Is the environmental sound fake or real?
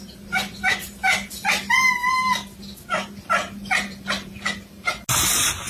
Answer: real